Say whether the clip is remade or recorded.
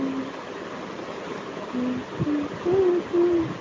recorded